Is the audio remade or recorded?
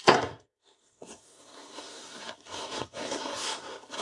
remade